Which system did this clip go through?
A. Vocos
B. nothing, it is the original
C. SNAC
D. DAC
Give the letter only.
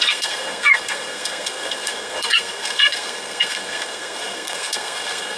C